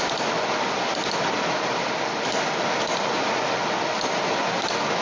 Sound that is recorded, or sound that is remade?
remade